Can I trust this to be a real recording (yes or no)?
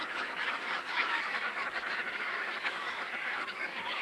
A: no